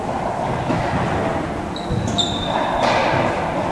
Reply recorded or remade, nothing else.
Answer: recorded